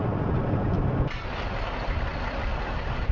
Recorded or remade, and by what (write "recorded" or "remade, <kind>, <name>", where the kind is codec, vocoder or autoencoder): recorded